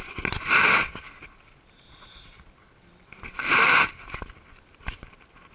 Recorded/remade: recorded